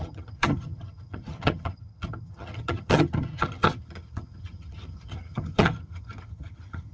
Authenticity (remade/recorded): remade